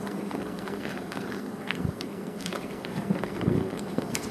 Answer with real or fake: fake